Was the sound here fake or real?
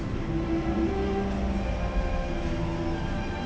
real